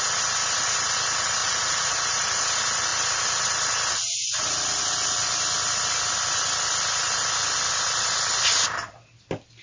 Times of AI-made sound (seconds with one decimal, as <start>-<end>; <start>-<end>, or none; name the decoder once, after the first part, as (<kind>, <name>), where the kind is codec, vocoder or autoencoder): 1.4-2.4 (vocoder, Vocos)